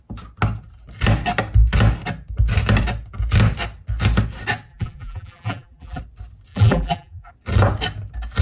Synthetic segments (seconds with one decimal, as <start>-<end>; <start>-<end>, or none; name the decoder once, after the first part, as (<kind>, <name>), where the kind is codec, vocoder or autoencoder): 4.7-6.0 (vocoder, BigVGAN v2); 6.5-7.3